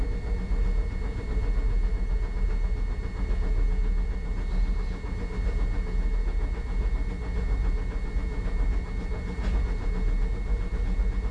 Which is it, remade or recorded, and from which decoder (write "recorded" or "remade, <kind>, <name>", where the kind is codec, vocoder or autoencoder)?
recorded